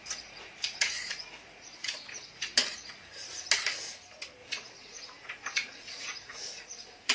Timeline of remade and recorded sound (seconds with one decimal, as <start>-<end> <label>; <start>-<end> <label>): 0.0-3.1 remade; 3.1-4.4 recorded; 4.4-7.1 remade